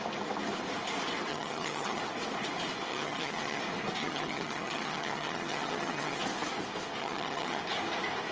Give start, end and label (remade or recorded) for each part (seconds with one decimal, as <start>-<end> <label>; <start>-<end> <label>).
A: 0.0-1.3 recorded; 1.3-2.0 remade; 2.0-2.9 recorded; 2.9-3.6 remade; 3.6-4.0 recorded; 4.0-6.2 remade; 6.2-7.0 recorded; 7.0-7.6 remade; 7.6-8.3 recorded